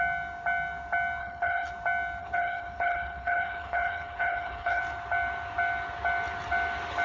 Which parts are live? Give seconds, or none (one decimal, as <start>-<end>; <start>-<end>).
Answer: 0.0-1.2; 1.7-2.2; 4.8-7.0